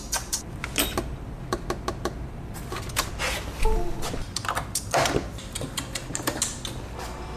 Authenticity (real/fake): real